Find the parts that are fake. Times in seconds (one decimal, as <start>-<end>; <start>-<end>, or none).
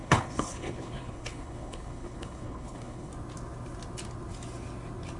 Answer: 0.0-3.1